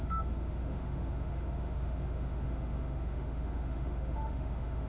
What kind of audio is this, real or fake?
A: fake